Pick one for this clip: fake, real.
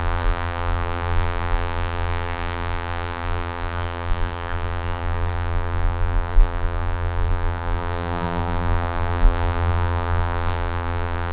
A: fake